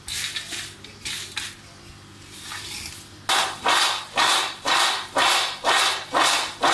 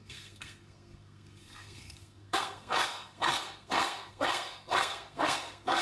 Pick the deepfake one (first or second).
second